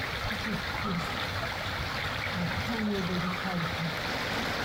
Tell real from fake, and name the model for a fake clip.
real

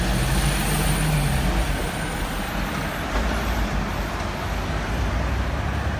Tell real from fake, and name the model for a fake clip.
real